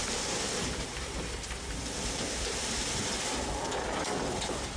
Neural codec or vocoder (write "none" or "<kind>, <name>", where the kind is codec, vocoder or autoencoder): none